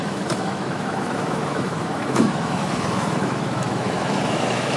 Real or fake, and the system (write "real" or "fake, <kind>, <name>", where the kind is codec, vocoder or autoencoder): fake, autoencoder, DAC-VAE